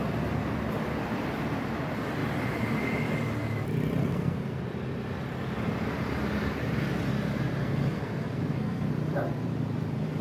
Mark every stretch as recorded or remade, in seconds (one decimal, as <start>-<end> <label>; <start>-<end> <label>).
0.0-4.0 recorded; 4.0-4.6 remade; 4.6-7.6 recorded; 7.6-8.9 remade; 8.9-10.2 recorded